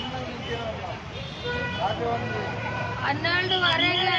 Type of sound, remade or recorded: recorded